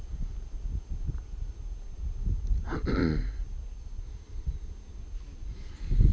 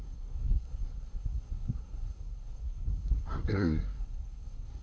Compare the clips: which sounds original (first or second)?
first